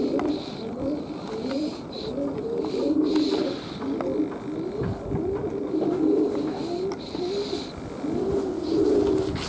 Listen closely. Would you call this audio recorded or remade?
recorded